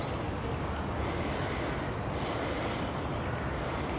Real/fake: real